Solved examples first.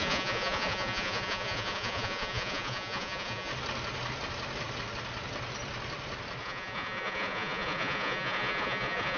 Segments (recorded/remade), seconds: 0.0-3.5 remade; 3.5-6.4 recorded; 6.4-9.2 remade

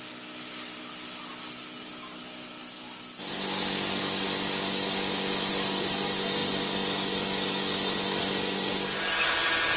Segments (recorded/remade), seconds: 0.0-9.8 recorded

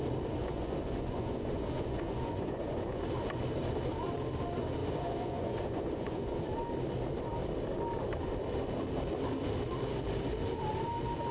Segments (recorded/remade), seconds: 0.0-0.4 recorded; 0.4-3.0 remade; 3.0-4.8 recorded; 4.8-6.4 remade; 6.4-11.3 recorded

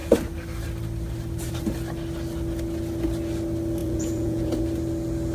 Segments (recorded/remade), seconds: 0.0-3.8 recorded; 3.8-4.6 remade; 4.6-5.3 recorded